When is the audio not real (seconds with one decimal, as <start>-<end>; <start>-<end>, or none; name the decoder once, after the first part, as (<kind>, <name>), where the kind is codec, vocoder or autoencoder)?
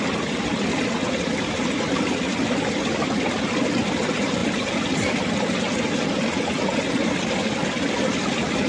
none